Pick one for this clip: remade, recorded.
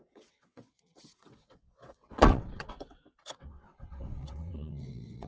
remade